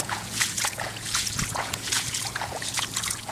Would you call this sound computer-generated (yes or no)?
yes